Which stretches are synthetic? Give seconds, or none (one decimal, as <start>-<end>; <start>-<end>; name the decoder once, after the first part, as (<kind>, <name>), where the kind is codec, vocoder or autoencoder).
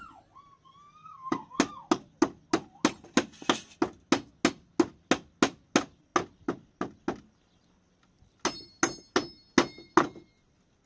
1.0-1.5 (codec, DAC)